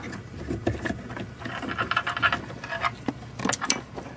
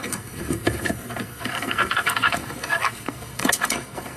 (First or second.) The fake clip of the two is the second